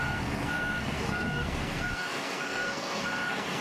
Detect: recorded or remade remade